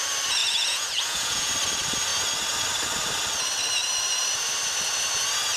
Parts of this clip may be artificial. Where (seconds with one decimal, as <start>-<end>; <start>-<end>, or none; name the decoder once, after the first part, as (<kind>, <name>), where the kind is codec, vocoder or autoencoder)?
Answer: 0.4-1.5 (vocoder, Vocos)